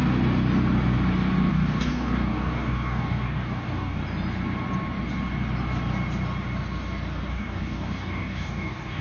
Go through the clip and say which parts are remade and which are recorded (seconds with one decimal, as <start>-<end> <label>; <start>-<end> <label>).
0.0-1.5 recorded; 1.5-4.0 remade; 4.0-7.3 recorded; 7.3-9.0 remade